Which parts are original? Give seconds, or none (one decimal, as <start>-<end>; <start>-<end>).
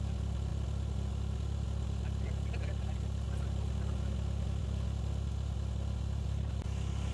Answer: 0.0-7.1